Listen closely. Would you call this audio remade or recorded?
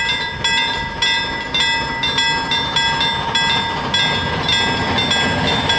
recorded